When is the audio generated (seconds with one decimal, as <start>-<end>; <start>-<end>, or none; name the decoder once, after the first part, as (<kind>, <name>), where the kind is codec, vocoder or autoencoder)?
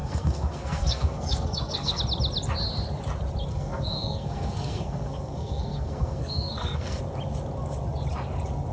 0.0-2.0 (codec, SNAC); 3.5-7.0